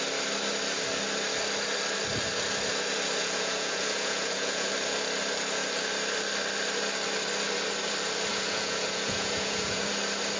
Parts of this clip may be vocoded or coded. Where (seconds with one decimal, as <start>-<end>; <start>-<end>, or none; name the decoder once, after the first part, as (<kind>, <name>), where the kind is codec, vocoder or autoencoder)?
3.2-4.7 (vocoder, Vocos); 8.3-9.9